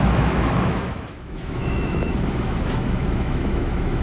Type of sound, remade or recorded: remade